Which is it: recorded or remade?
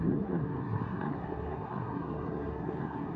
remade